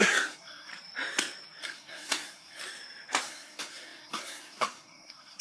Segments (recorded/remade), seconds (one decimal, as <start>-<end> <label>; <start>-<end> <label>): 0.0-0.7 remade; 0.7-1.6 recorded; 1.6-2.6 remade; 2.6-3.2 recorded; 3.2-5.4 remade